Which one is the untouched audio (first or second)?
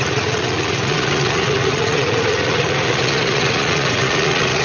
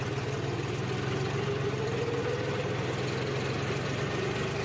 second